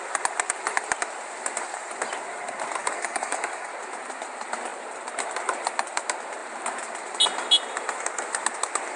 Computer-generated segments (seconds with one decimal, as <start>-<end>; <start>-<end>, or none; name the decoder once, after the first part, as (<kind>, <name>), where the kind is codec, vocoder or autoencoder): 2.8-3.7 (codec, DAC)